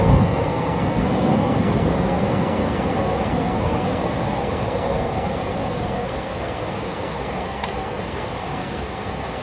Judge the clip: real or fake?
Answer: fake